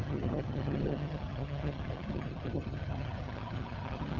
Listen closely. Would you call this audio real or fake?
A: fake